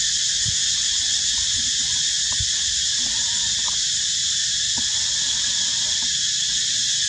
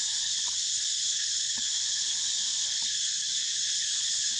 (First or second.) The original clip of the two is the first